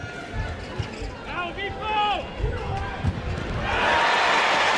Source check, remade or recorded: recorded